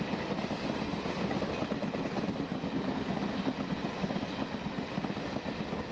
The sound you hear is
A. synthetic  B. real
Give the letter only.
B